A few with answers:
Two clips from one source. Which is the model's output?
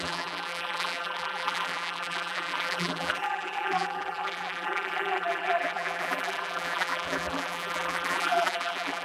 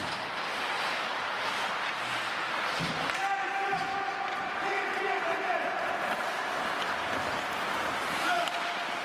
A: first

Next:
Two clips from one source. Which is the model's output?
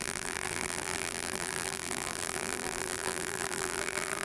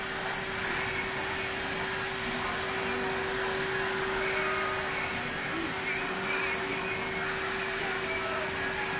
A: first